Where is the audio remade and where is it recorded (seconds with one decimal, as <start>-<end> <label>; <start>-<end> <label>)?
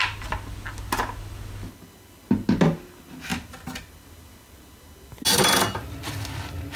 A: 0.0-6.8 recorded